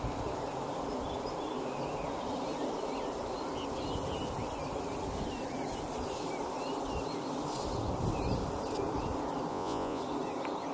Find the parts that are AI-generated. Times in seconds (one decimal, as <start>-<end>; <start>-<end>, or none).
9.5-10.0